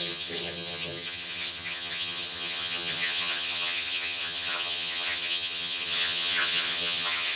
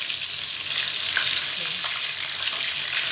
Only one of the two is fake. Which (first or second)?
first